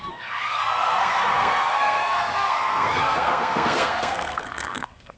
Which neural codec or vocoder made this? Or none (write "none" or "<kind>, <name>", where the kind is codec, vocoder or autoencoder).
codec, SNAC